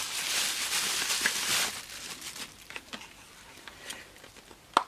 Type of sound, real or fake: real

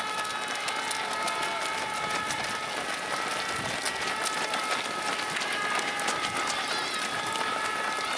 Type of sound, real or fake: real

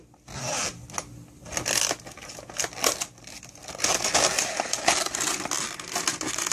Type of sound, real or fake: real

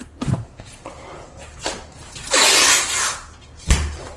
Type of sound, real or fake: real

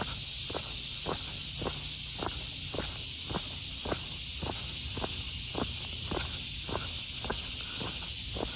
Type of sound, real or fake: real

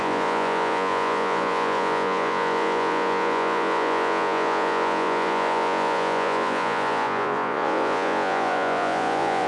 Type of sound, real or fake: fake